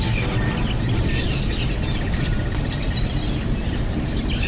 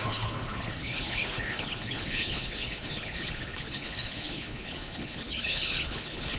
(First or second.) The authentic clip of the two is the first